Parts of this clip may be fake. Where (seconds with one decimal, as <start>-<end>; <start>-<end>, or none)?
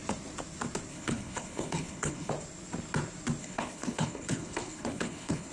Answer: 0.9-2.3; 3.4-5.5